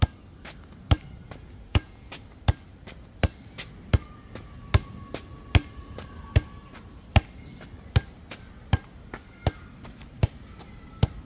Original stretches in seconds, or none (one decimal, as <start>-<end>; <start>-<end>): 0.0-1.7; 2.2-11.2